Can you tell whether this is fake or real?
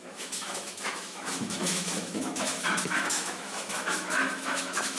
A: fake